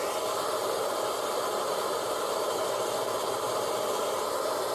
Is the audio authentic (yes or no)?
yes